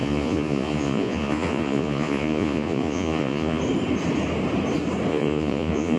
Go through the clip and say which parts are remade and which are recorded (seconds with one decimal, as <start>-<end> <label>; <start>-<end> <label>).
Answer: 0.0-3.6 remade; 3.6-5.1 recorded; 5.1-6.0 remade